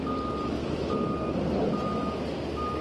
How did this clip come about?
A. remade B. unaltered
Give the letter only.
B